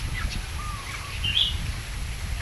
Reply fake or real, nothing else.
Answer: real